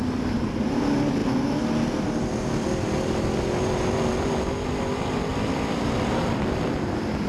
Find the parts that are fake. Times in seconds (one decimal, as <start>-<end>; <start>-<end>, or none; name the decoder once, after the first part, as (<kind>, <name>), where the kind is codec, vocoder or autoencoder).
5.3-6.1 (vocoder, BigVGAN v2)